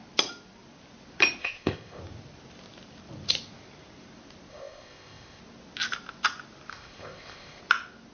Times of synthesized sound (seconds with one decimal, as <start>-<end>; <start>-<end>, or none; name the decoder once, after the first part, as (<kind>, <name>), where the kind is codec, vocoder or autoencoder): 1.4-2.0 (codec, ZipCodec); 4.5-5.4; 6.7-7.6